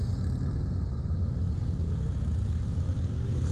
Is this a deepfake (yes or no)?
no